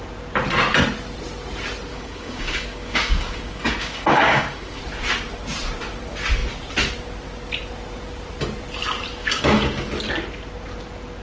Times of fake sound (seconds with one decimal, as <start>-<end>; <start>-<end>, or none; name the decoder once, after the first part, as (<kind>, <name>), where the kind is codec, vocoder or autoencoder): 1.9-4.8 (codec, DAC); 9.2-9.9